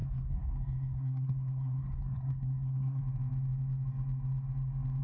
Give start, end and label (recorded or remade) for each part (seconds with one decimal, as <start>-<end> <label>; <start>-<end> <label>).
0.0-3.0 remade; 3.0-5.0 recorded